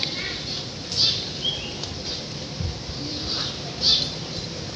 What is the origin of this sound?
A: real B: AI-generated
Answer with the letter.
A